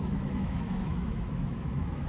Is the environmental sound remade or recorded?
remade